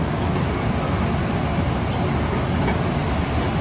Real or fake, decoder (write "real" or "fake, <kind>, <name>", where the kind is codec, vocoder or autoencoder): real